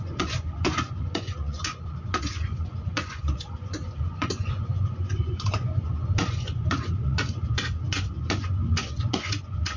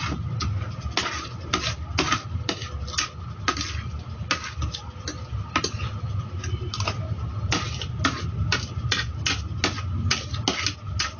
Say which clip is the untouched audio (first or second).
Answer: second